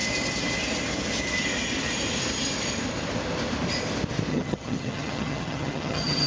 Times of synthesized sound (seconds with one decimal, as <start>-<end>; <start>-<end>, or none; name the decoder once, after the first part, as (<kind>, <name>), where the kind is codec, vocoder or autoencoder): 4.3-6.3 (vocoder, HiFi-GAN)